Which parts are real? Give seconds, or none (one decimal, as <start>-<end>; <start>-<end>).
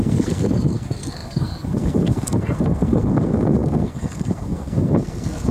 none